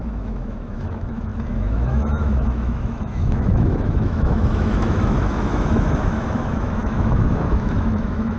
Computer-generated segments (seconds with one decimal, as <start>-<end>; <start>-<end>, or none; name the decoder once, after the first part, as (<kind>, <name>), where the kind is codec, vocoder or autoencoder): 0.0-8.4 (autoencoder, DAC-VAE)